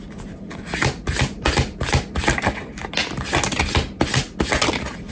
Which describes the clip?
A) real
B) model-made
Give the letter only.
A